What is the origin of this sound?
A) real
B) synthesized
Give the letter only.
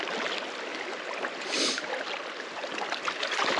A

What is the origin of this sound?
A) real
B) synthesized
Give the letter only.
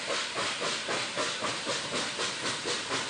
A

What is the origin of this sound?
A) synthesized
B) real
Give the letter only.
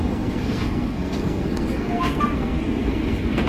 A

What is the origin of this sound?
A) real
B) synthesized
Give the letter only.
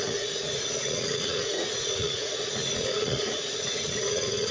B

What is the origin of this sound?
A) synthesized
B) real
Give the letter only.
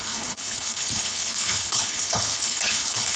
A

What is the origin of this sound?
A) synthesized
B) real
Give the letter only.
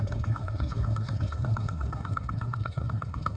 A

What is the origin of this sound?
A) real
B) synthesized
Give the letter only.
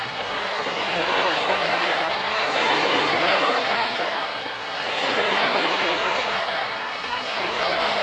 B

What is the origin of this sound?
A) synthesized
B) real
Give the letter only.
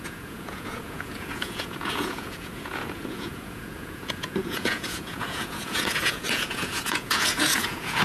A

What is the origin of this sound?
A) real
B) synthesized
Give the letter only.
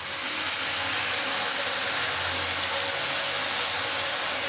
A